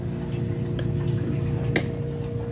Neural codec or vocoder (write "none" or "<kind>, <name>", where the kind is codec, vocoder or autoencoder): none